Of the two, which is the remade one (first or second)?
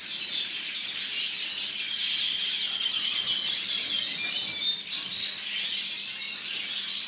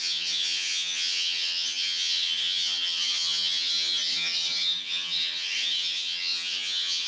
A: second